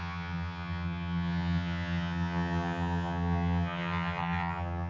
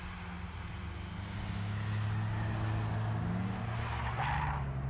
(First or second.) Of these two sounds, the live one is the second